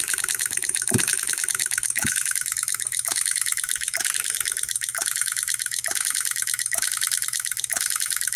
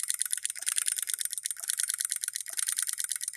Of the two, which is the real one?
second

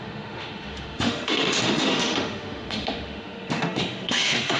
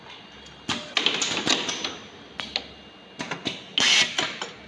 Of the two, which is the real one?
second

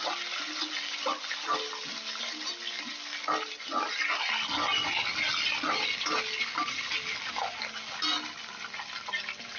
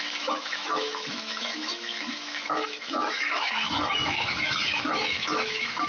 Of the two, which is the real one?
first